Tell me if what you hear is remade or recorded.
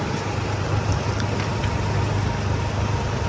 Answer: recorded